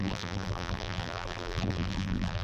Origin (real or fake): fake